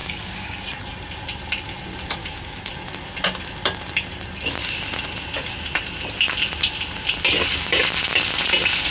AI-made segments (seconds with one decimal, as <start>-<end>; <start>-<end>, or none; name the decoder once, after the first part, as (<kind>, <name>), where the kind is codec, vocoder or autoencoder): 0.0-0.6 (codec, DAC); 2.2-2.7